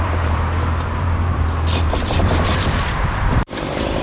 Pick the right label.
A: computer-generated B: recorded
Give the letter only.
A